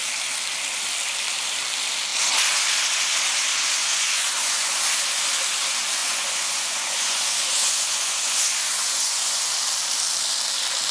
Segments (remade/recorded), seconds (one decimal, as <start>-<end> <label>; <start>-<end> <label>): 0.0-3.8 recorded; 3.8-4.8 remade; 4.8-6.0 recorded; 6.0-9.4 remade; 9.4-10.9 recorded